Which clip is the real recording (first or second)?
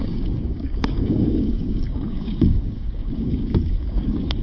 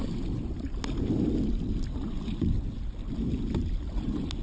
second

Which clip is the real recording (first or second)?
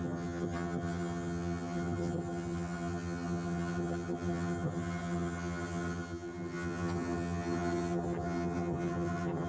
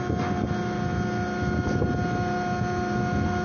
second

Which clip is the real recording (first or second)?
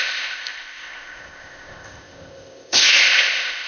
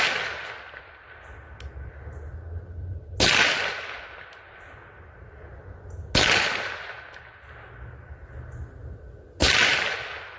second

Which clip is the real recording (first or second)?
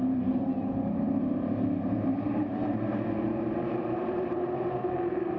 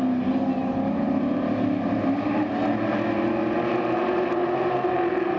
second